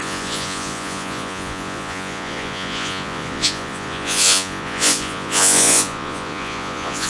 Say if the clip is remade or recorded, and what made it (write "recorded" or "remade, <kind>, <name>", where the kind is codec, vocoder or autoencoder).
remade, vocoder, Vocos